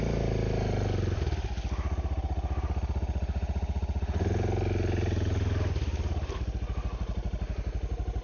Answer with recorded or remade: recorded